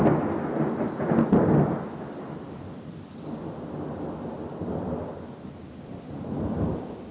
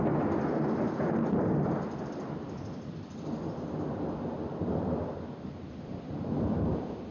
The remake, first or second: second